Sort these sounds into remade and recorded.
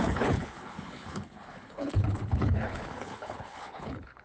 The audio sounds remade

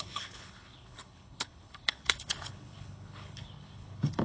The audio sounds remade